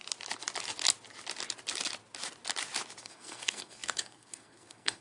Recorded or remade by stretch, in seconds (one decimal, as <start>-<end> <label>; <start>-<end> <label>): 0.0-3.0 recorded; 3.0-5.0 remade